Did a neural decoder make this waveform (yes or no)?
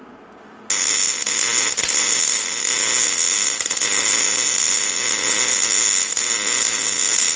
no